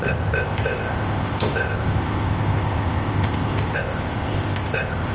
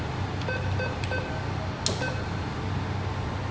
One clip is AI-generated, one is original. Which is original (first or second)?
second